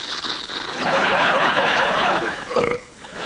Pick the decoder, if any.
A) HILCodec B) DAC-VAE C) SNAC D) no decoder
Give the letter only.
A